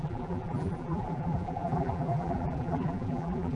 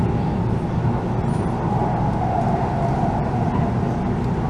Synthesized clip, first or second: first